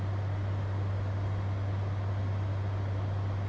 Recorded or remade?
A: recorded